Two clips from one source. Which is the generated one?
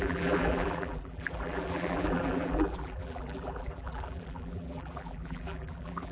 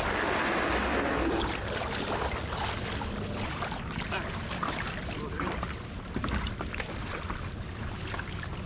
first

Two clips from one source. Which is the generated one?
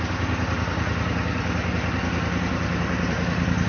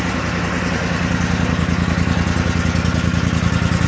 first